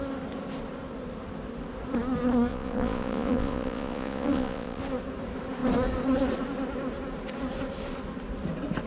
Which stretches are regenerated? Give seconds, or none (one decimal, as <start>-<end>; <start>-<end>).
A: 2.5-4.8